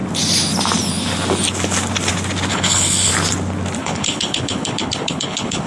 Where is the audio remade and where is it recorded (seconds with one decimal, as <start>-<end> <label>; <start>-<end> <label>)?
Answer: 0.0-2.5 recorded; 2.5-3.1 remade; 3.1-3.8 recorded; 3.8-5.7 remade